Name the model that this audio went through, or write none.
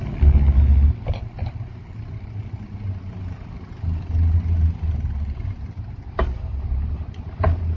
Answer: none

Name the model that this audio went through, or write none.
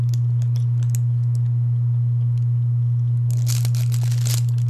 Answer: none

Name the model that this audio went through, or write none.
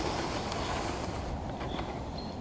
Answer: none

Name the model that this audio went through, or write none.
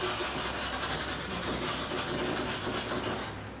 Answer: none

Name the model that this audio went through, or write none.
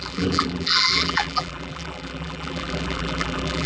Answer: vocoder, BigVGAN v2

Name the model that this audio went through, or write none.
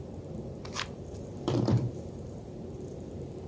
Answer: vocoder, BigVGAN v2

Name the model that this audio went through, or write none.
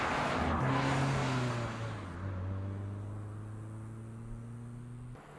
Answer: none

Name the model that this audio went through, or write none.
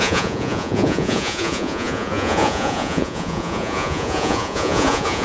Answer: vocoder, Vocos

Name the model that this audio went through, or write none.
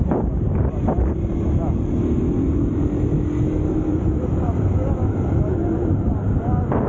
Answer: none